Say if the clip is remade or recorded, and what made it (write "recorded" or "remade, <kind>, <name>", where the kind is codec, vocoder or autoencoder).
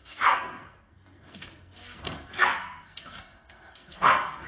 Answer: remade, codec, SNAC